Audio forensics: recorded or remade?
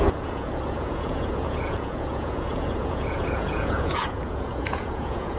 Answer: remade